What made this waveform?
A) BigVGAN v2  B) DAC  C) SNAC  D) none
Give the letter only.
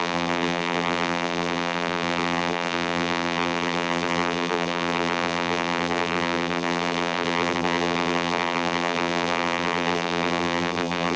A